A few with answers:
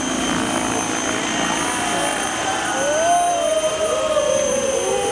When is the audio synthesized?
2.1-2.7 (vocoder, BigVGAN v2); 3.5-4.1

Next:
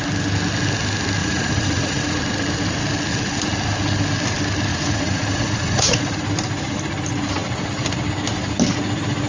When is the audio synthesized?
1.2-2.2 (vocoder, Vocos); 4.7-6.2